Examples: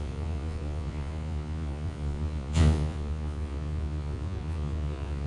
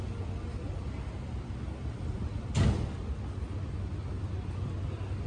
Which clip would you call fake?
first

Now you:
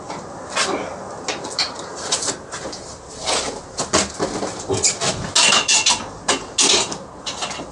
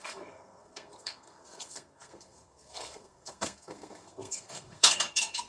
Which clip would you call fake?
second